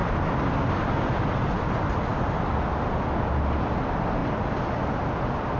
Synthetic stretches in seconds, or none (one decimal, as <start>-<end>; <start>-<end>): 0.0-1.6